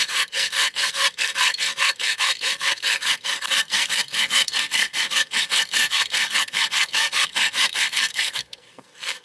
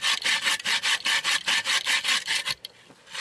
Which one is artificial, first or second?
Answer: first